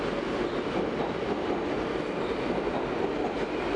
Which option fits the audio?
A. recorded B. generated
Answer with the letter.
A